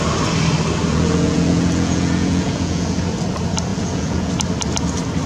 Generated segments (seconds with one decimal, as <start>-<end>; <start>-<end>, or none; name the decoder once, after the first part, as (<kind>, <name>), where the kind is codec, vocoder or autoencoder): 0.9-3.0 (vocoder, Vocos); 3.7-4.3